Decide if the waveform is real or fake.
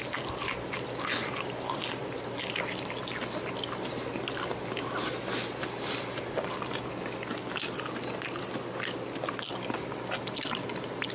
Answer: real